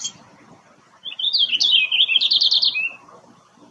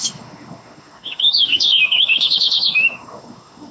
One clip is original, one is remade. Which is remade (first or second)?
second